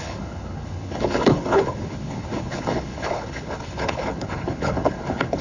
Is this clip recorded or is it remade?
remade